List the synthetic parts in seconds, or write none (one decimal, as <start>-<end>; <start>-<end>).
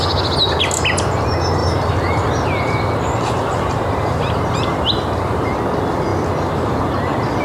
1.6-5.5